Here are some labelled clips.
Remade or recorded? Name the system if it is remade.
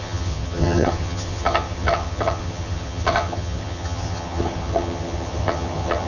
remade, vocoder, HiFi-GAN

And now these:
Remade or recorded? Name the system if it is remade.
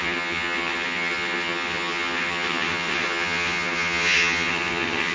remade, vocoder, HiFi-GAN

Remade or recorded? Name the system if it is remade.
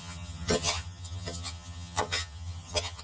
remade, vocoder, HiFi-GAN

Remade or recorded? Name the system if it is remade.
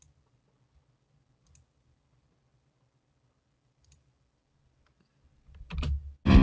recorded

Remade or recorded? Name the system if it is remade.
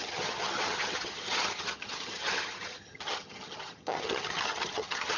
remade, vocoder, HiFi-GAN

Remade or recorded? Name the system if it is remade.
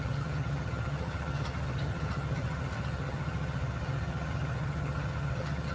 remade, vocoder, HiFi-GAN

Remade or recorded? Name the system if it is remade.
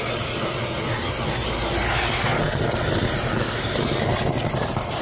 recorded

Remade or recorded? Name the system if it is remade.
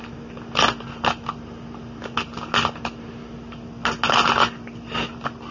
recorded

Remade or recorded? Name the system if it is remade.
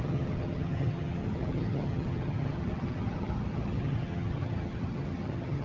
remade, vocoder, HiFi-GAN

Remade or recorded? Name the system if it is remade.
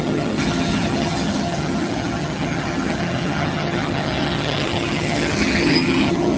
remade, vocoder, HiFi-GAN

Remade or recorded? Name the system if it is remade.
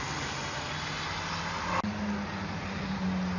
recorded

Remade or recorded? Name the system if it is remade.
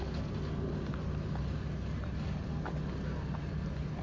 recorded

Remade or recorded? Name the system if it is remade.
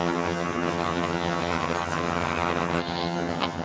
remade, vocoder, HiFi-GAN